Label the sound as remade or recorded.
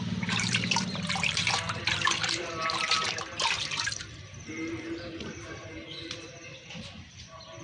remade